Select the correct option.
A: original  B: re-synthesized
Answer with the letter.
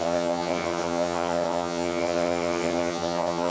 B